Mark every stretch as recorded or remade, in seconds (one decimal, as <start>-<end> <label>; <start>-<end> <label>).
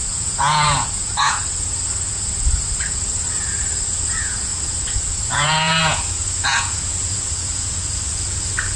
0.0-8.8 remade